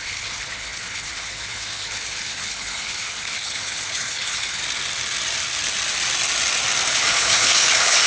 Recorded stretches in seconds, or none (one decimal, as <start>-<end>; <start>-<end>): 4.6-6.9